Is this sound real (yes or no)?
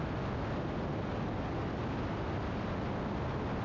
yes